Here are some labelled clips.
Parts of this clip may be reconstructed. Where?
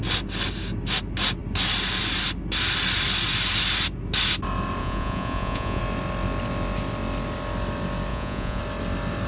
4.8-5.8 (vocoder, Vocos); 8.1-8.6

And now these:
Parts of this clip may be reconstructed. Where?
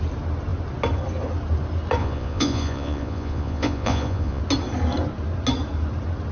2.0-4.4 (vocoder, Vocos)